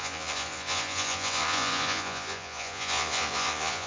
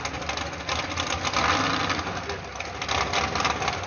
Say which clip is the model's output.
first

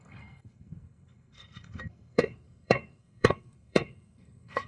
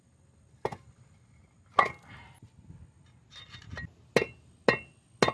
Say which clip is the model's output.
first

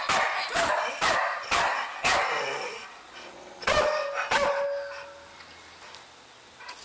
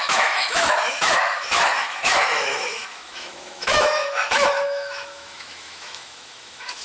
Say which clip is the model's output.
second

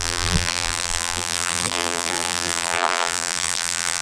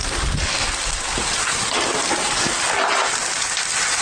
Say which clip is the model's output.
first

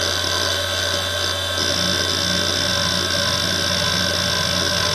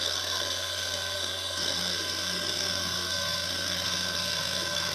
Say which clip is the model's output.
second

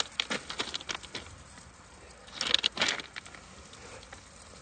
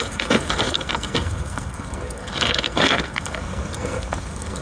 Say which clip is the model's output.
second